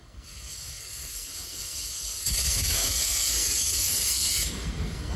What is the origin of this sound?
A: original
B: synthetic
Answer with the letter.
B